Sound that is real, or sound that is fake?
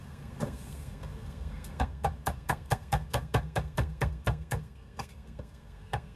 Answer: fake